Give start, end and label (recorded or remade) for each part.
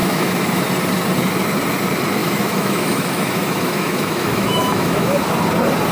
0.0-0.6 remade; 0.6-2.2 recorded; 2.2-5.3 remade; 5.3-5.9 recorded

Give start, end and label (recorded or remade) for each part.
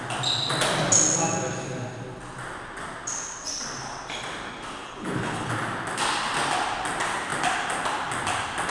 0.0-4.8 recorded; 4.8-5.5 remade; 5.5-8.7 recorded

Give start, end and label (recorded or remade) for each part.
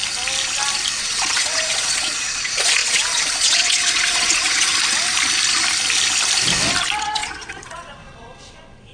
0.0-1.0 recorded; 1.0-4.7 remade; 4.7-7.0 recorded; 7.0-8.9 remade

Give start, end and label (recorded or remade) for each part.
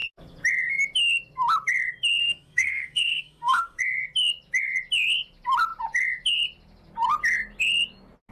0.0-2.2 recorded; 2.2-3.8 remade; 3.8-8.3 recorded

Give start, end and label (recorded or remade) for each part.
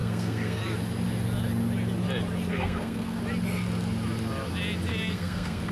0.0-0.6 remade; 0.6-2.5 recorded; 2.5-3.2 remade; 3.2-4.9 recorded; 4.9-5.7 remade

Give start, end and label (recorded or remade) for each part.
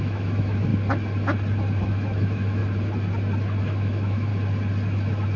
0.0-0.7 remade; 0.7-1.8 recorded; 1.8-2.6 remade; 2.6-3.6 recorded; 3.6-4.3 remade; 4.3-5.4 recorded